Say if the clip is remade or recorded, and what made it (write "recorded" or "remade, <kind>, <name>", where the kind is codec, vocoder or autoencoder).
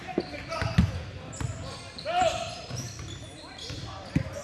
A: recorded